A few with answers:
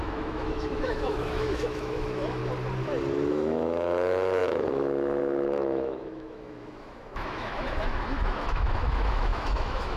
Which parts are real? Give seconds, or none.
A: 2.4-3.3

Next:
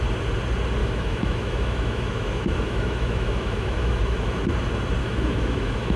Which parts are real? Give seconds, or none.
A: 0.0-0.8; 4.4-5.0

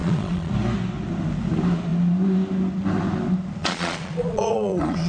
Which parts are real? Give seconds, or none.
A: 0.5-3.6

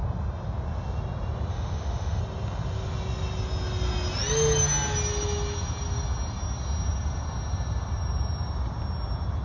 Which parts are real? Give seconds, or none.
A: 0.0-1.5; 2.2-9.4

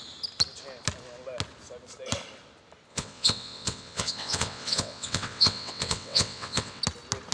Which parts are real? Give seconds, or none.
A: 0.0-2.9; 6.8-7.3

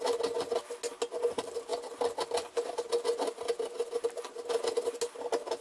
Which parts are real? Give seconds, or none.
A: 0.0-5.6

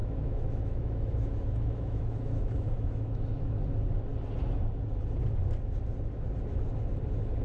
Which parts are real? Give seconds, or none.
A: 3.6-7.4

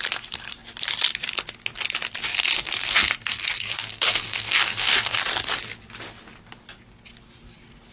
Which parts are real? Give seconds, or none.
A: 0.0-2.3; 5.2-7.9